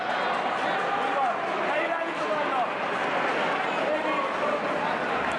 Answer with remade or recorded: recorded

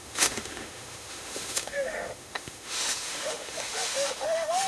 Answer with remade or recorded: remade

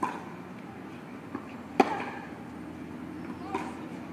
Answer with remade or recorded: recorded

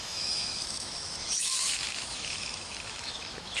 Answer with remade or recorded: remade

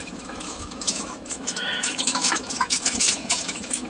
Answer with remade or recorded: remade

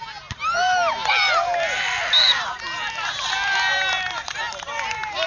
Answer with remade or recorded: recorded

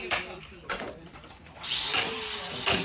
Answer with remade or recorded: recorded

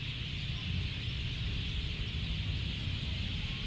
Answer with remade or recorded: recorded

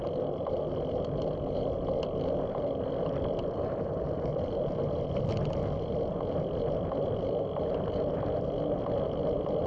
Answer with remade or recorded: recorded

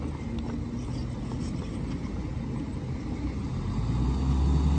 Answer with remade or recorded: recorded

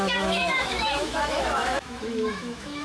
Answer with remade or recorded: remade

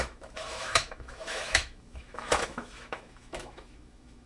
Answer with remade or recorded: remade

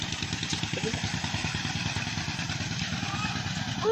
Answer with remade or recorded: recorded